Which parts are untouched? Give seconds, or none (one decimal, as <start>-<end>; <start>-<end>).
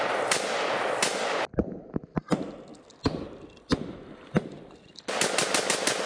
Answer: 0.0-6.1